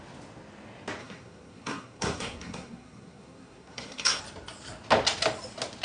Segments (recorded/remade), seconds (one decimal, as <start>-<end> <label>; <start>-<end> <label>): 0.0-1.0 recorded; 1.0-4.2 remade; 4.2-5.8 recorded